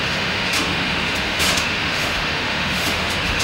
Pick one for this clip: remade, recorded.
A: remade